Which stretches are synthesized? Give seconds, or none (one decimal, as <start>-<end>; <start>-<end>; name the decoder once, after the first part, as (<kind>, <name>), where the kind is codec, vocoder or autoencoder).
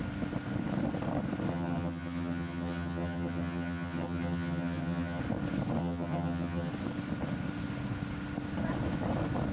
1.5-5.2 (vocoder, HiFi-GAN); 5.8-6.7